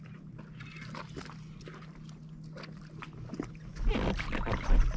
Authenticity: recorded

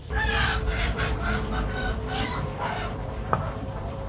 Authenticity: remade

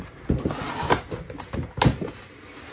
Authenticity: recorded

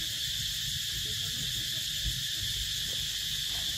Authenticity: recorded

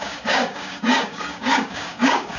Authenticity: remade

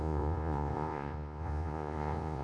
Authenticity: remade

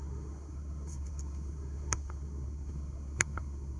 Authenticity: remade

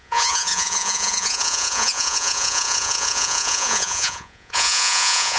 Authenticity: remade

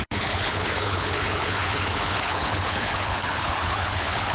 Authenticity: remade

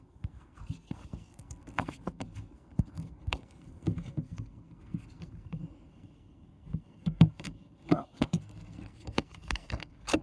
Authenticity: remade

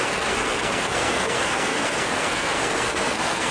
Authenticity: remade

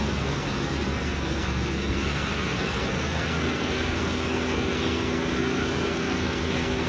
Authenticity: remade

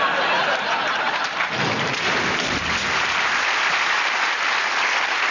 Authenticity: recorded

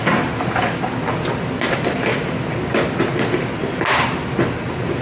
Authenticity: recorded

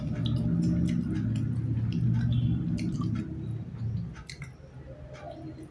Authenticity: recorded